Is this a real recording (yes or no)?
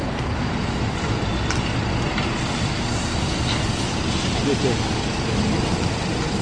yes